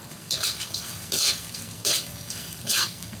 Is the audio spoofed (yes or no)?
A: yes